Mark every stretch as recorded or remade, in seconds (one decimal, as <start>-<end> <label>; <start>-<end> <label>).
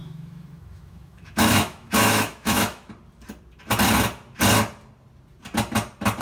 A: 0.0-2.9 remade; 2.9-6.2 recorded